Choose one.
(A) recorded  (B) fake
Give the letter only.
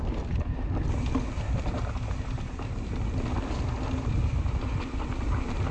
A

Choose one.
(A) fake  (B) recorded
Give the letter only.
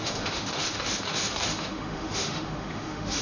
A